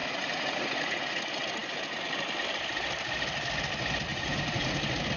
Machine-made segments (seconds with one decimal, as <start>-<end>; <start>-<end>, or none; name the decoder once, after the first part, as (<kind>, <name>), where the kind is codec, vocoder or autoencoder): 0.0-1.2 (vocoder, Vocos); 4.1-4.8